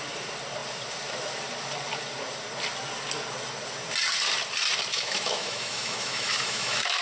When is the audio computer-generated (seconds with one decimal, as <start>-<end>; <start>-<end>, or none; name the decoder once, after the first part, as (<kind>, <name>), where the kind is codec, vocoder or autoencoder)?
4.9-7.0 (autoencoder, DAC-VAE)